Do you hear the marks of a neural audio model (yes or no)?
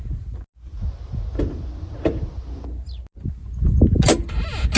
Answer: no